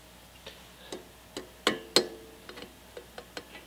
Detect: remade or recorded recorded